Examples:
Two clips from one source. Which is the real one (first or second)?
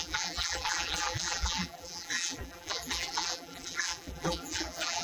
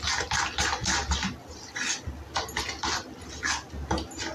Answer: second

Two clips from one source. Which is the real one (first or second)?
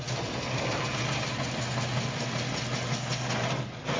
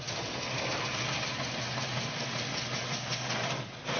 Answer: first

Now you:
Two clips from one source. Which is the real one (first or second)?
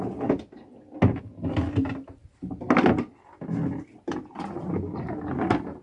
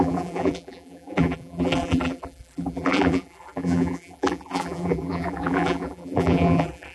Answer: first